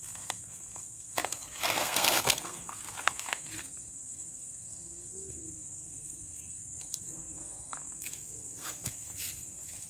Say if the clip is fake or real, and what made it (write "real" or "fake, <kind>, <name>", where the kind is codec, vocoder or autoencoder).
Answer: fake, codec, SNAC